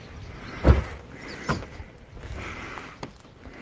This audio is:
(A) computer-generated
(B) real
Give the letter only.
B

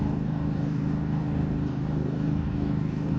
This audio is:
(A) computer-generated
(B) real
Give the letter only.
A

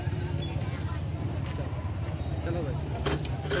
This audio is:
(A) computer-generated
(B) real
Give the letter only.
B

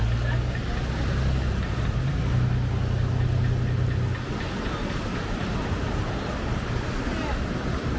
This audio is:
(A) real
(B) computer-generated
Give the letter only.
A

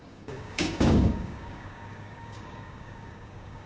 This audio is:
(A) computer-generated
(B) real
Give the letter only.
A